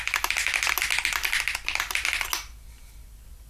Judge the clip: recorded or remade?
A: recorded